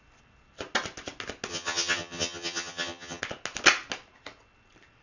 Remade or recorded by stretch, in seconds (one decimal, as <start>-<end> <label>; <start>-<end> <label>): 0.0-1.5 recorded; 1.5-3.2 remade; 3.2-5.0 recorded